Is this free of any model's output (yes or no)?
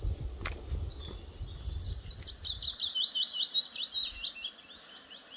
yes